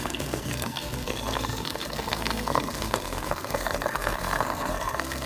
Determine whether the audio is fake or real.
fake